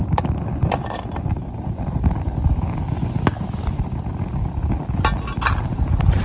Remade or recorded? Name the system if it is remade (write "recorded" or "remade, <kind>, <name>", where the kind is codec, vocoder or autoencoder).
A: recorded